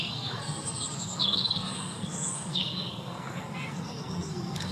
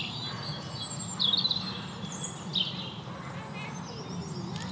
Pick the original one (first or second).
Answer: second